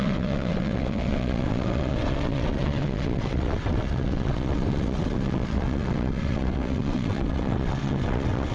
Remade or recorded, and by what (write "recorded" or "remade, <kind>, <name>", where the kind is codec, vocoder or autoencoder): remade, vocoder, WaveNeXt